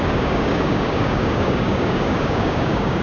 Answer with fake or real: fake